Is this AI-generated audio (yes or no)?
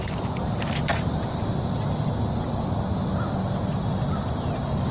no